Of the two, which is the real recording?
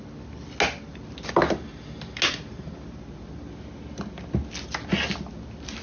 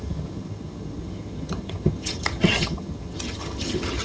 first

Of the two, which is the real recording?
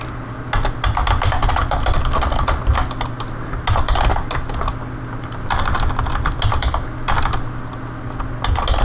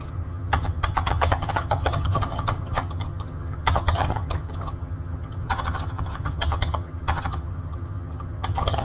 first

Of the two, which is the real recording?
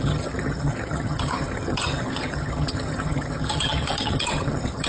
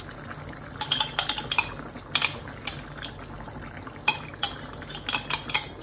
second